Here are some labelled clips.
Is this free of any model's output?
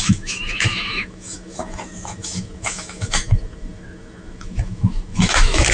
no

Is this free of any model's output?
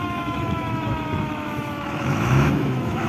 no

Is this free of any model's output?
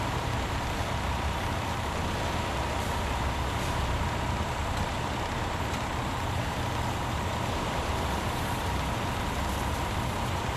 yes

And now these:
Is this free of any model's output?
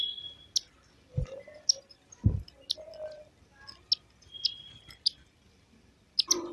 yes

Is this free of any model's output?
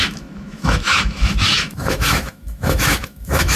no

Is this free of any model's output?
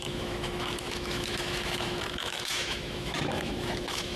no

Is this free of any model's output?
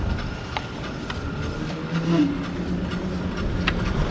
yes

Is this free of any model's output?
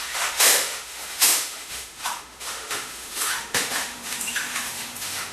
no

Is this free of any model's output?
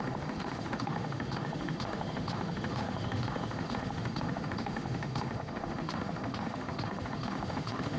no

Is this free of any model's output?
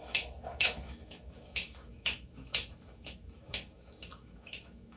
no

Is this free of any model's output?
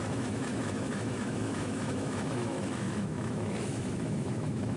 no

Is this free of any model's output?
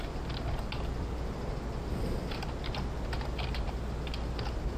yes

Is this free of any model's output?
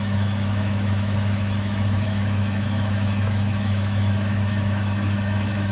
no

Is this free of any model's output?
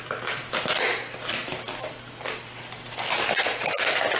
yes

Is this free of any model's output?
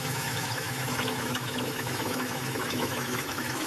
no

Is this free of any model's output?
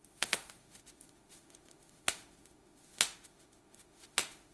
no